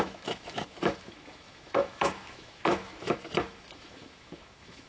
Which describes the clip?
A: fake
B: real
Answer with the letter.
A